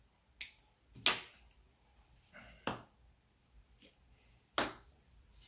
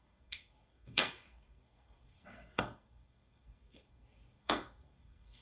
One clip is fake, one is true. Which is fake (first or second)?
second